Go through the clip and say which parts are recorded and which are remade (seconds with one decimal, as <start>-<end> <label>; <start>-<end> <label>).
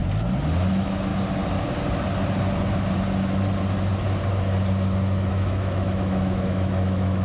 0.0-0.7 recorded; 0.7-1.1 remade; 1.1-5.3 recorded; 5.3-7.2 remade